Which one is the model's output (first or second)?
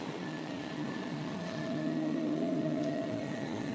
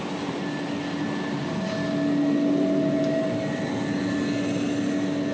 first